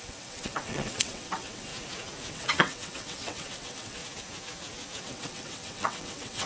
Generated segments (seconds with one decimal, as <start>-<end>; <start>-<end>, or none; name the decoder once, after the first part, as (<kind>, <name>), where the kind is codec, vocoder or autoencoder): 0.0-1.7 (vocoder, WaveNeXt); 2.3-4.0; 5.0-6.5